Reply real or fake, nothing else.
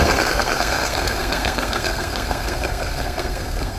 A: fake